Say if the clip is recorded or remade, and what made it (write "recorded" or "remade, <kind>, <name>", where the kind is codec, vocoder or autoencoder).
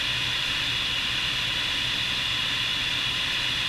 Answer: recorded